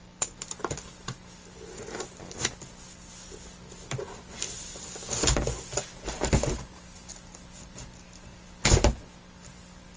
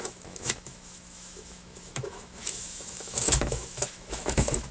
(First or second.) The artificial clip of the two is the second